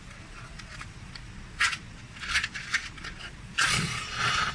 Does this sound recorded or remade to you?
remade